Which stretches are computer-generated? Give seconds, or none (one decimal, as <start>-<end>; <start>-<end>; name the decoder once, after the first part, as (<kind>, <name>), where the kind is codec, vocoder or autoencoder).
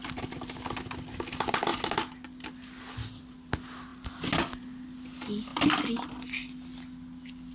none